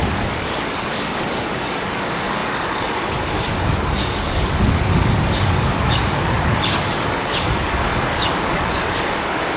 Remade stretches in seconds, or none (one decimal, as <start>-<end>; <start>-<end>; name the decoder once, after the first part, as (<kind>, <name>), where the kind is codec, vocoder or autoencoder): 0.0-9.6 (codec, DAC)